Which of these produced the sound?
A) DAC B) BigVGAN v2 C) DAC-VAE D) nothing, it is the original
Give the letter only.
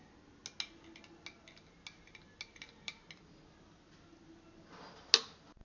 D